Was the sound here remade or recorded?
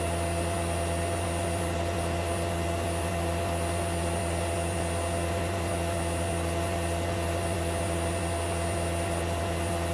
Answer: recorded